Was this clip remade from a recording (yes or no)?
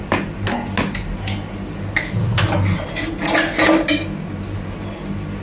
no